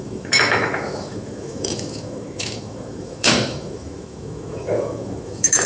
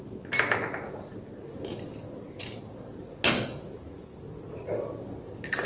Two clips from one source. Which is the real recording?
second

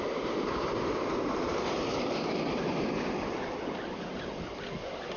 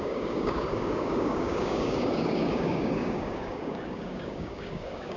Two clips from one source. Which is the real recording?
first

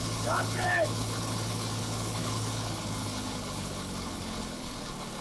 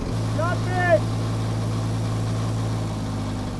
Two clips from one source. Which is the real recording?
second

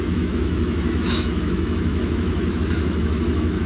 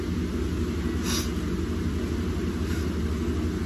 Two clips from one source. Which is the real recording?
second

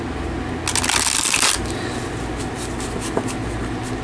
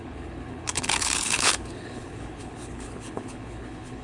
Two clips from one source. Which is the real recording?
first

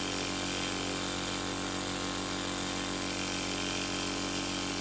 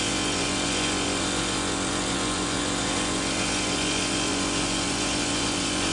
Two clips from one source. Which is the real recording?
first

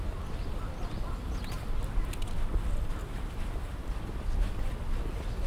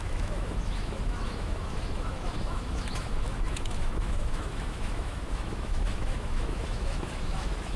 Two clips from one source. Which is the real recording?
first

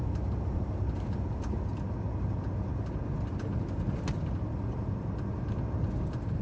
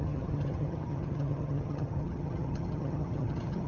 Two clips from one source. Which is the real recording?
first